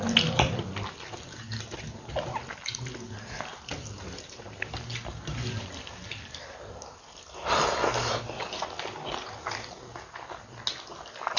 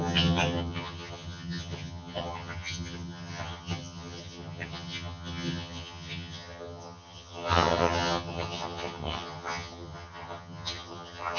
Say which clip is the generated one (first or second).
second